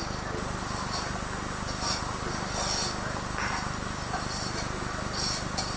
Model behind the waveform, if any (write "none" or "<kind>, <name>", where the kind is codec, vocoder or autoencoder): none